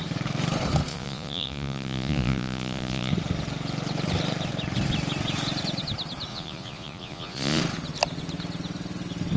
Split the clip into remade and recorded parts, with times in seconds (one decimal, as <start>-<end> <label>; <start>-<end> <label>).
0.0-0.9 recorded; 0.9-3.1 remade; 3.1-6.3 recorded; 6.3-7.6 remade; 7.6-9.4 recorded